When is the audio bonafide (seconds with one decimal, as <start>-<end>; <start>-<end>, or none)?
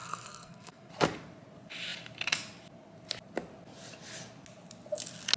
0.9-5.4